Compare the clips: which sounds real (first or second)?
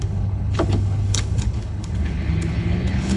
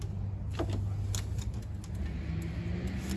second